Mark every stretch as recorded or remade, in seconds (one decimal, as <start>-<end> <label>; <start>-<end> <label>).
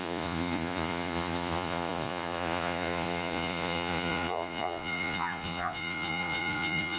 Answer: 0.0-7.0 remade